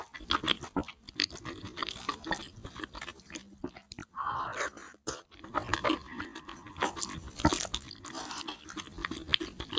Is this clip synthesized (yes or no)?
no